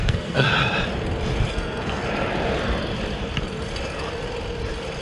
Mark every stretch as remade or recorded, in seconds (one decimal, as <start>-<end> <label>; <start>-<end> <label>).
0.0-0.5 remade; 0.5-1.5 recorded; 1.5-2.0 remade; 2.0-5.0 recorded